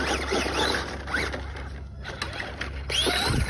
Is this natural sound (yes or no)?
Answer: yes